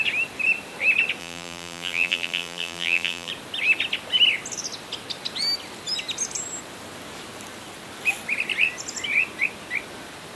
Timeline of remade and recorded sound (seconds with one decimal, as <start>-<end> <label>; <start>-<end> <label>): 0.0-1.2 recorded; 1.2-3.3 remade; 3.3-10.4 recorded